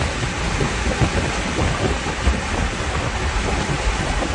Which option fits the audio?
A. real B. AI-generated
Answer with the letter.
A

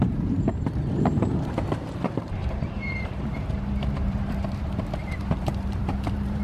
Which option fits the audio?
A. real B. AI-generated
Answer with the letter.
B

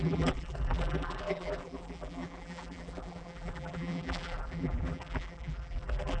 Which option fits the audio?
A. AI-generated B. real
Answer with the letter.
A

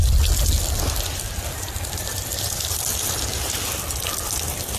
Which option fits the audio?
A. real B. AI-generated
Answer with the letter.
A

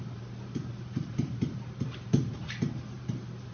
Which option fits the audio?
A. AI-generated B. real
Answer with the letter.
A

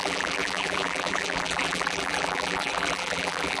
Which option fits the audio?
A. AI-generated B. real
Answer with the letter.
A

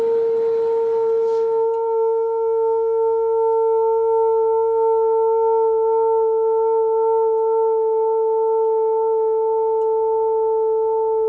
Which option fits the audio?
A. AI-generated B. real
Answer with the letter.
B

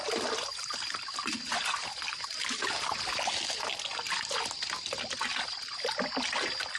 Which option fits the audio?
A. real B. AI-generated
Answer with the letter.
A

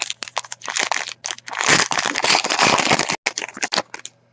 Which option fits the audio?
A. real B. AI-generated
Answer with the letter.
A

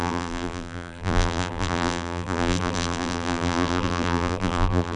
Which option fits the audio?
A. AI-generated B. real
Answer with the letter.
A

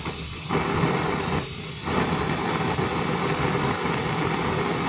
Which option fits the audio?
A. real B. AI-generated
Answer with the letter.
A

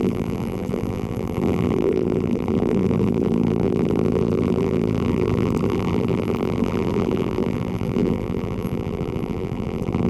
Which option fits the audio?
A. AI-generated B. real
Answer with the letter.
A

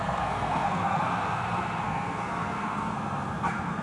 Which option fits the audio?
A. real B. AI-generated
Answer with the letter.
B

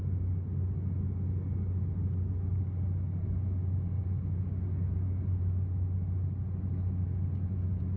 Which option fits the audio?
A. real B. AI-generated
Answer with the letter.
A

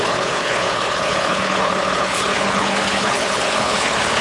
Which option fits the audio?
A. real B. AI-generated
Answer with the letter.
B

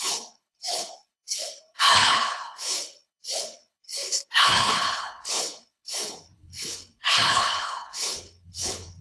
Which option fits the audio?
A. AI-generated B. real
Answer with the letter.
A